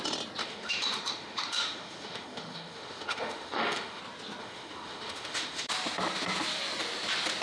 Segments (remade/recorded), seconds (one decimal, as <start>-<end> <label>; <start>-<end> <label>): 0.0-0.4 recorded; 0.4-4.0 remade; 4.0-4.4 recorded; 4.4-5.7 remade; 5.7-7.4 recorded